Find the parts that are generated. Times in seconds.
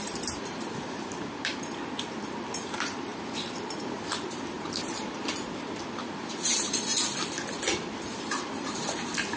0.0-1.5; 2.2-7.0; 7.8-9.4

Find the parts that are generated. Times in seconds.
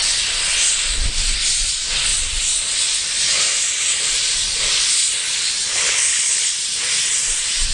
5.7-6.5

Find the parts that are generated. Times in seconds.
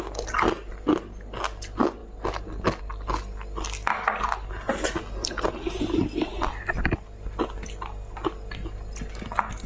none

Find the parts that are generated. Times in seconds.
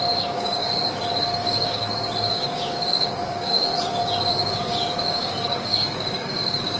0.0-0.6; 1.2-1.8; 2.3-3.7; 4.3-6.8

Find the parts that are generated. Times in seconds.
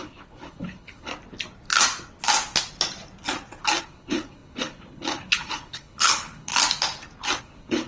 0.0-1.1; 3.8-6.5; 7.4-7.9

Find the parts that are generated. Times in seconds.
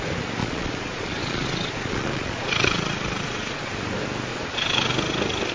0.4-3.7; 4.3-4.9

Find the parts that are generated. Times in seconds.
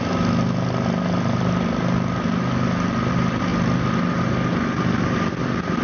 none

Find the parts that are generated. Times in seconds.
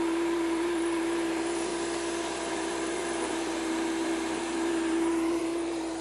0.0-1.7; 2.2-6.0